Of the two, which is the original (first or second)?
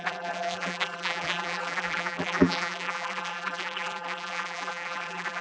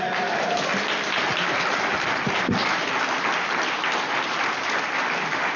second